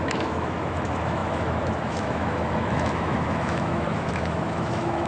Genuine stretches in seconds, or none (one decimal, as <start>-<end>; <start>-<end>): none